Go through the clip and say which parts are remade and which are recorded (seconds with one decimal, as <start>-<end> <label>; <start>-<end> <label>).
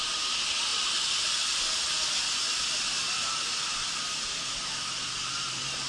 0.0-5.9 recorded